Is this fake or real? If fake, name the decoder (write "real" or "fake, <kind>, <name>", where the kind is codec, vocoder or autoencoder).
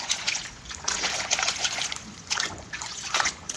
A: fake, vocoder, Vocos